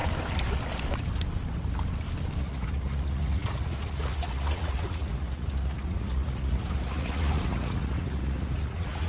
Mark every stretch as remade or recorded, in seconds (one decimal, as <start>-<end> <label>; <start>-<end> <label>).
0.0-2.4 recorded; 2.4-9.1 remade